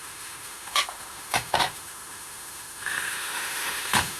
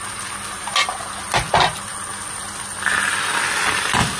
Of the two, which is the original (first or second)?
second